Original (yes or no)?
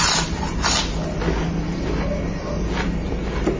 yes